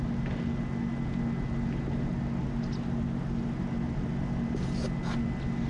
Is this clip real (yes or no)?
yes